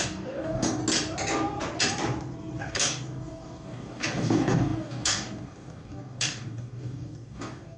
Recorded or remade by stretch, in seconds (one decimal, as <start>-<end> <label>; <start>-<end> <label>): 0.0-0.8 remade; 0.8-2.6 recorded; 2.6-7.8 remade